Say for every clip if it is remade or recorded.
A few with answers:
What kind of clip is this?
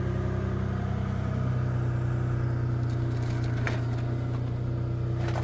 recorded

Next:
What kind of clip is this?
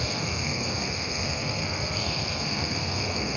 remade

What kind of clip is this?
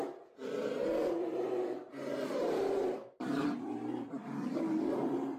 recorded